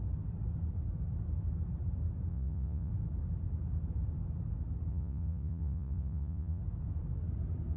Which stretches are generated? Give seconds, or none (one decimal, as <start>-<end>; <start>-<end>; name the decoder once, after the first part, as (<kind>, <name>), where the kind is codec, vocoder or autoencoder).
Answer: 2.3-2.9 (vocoder, Vocos); 4.9-6.6